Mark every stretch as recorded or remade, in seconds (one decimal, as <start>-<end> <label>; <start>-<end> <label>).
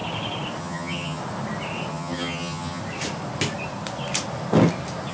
0.0-0.6 recorded; 0.6-1.2 remade; 1.2-1.9 recorded; 1.9-2.8 remade; 2.8-5.1 recorded